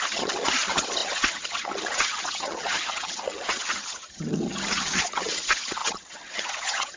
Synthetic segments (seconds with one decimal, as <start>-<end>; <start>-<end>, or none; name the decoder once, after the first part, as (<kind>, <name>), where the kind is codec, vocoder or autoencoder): 0.0-7.0 (vocoder, HiFi-GAN)